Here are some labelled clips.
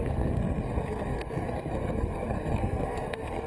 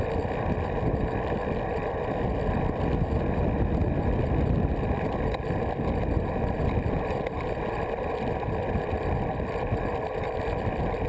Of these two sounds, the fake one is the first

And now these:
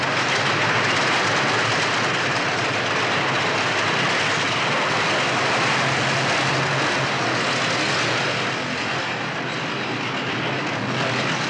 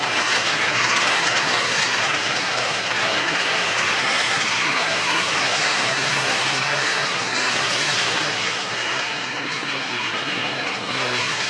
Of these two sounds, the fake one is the second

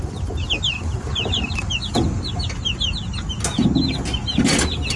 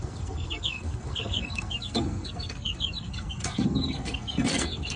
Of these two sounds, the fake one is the second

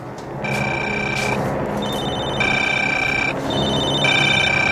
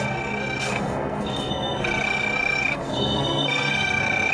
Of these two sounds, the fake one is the second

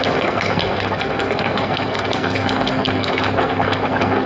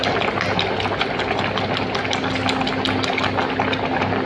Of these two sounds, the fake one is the first